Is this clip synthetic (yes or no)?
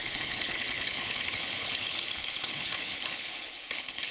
yes